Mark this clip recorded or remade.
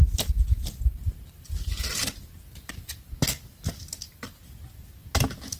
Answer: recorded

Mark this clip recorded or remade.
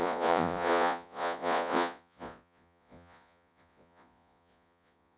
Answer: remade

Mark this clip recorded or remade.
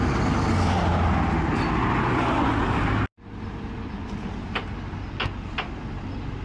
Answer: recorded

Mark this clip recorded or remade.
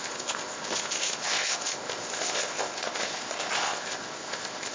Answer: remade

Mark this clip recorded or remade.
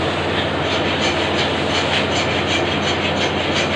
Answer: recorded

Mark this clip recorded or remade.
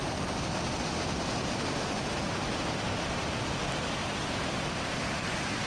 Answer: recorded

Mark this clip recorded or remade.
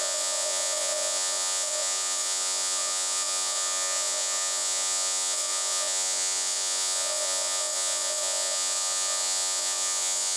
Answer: remade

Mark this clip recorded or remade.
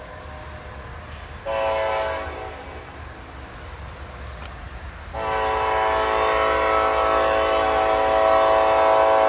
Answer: recorded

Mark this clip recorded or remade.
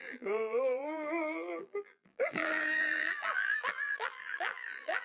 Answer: remade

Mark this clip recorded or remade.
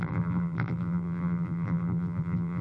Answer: remade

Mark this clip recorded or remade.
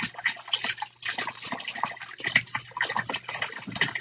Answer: recorded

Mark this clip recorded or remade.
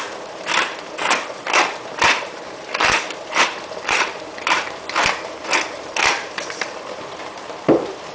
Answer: remade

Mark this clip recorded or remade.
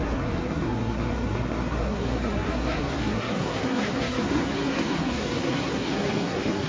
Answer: remade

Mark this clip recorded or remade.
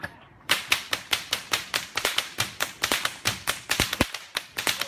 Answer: remade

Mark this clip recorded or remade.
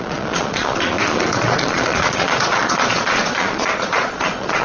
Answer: remade